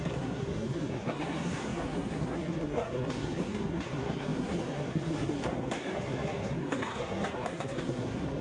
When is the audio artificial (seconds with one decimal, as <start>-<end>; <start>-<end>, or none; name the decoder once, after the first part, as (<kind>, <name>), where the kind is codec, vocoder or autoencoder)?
0.0-8.4 (codec, SNAC)